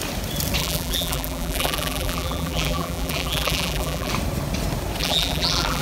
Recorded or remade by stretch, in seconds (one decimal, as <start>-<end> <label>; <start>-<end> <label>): 0.0-0.6 recorded; 0.6-4.1 remade; 4.1-5.0 recorded; 5.0-5.8 remade